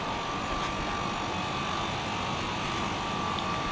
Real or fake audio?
real